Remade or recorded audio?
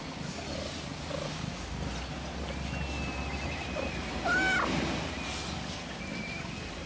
recorded